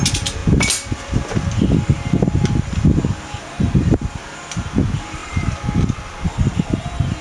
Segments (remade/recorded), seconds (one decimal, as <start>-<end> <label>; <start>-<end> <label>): 0.0-7.2 recorded